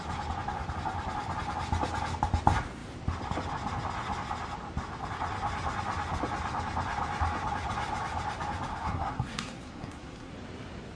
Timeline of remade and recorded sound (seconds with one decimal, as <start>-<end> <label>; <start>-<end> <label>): 0.0-8.7 recorded; 8.7-10.3 remade; 10.3-11.0 recorded